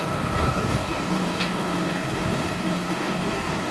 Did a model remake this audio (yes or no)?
yes